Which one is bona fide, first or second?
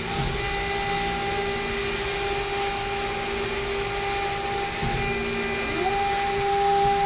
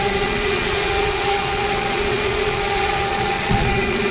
first